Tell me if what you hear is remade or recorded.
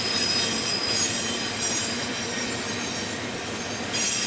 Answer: remade